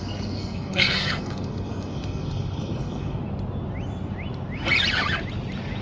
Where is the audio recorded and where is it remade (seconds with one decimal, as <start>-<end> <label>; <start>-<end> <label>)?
0.0-3.2 remade; 3.2-5.8 recorded

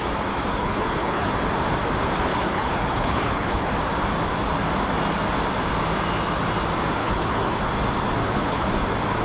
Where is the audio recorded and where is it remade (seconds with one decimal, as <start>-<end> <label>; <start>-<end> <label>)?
0.0-0.5 recorded; 0.5-1.3 remade; 1.3-2.3 recorded; 2.3-3.7 remade; 3.7-7.0 recorded; 7.0-7.6 remade; 7.6-8.2 recorded; 8.2-8.7 remade; 8.7-9.2 recorded

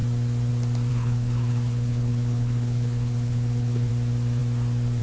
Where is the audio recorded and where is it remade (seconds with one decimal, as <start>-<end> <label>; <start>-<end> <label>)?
0.0-0.9 recorded; 0.9-3.9 remade; 3.9-5.0 recorded

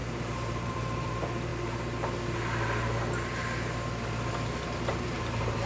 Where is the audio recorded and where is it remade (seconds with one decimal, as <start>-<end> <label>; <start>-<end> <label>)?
0.0-1.5 remade; 1.5-4.9 recorded; 4.9-5.7 remade

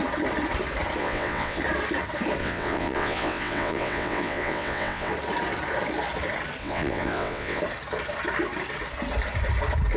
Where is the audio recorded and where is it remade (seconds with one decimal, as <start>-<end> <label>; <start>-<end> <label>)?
0.0-1.0 recorded; 1.0-1.6 remade; 1.6-2.4 recorded; 2.4-5.1 remade; 5.1-6.6 recorded; 6.6-7.6 remade; 7.6-10.0 recorded